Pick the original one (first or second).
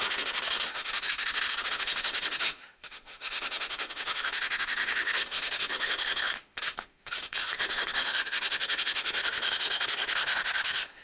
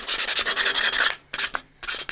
second